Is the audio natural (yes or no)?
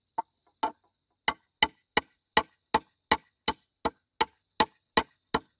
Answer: yes